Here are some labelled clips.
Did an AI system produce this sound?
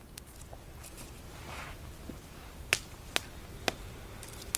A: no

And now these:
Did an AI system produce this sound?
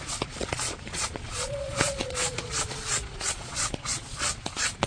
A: yes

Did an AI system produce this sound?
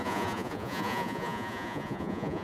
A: yes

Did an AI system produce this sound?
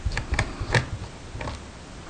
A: no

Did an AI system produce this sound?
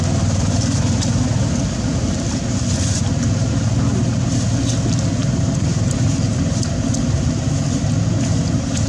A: no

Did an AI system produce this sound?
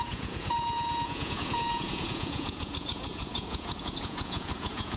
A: yes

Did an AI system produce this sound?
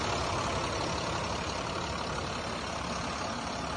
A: no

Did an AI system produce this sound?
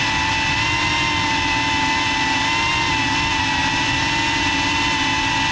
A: no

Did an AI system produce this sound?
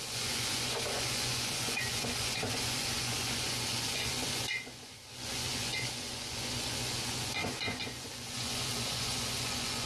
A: yes